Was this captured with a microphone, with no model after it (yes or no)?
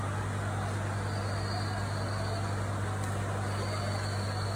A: yes